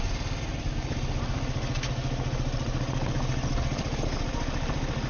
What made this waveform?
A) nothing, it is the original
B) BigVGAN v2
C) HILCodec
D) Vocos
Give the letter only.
A